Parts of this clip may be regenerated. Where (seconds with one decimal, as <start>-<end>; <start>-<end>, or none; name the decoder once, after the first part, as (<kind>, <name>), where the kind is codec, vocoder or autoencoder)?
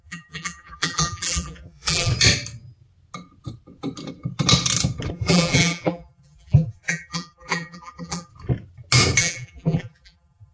0.0-2.1 (vocoder, BigVGAN v2); 5.1-8.3; 9.2-10.5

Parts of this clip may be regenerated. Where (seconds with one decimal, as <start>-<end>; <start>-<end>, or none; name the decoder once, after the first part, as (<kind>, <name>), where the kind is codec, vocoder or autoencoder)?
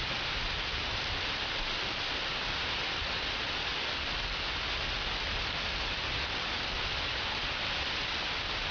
0.0-0.4 (vocoder, BigVGAN v2); 1.0-3.7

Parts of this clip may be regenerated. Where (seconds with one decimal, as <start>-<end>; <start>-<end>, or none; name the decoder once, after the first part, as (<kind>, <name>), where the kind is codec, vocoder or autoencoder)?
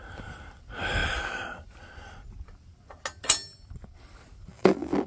4.5-5.1 (vocoder, BigVGAN v2)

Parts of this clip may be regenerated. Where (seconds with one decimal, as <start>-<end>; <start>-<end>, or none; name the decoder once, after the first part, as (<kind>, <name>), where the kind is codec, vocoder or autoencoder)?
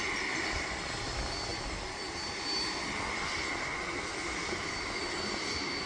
none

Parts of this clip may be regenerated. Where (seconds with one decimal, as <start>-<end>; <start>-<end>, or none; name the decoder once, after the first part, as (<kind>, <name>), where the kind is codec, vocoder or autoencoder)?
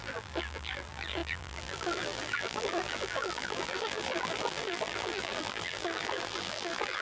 0.0-7.0 (vocoder, BigVGAN v2)